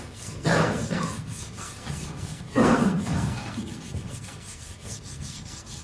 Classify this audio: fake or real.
fake